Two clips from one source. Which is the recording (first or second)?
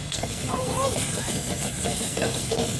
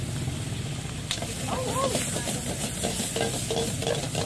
second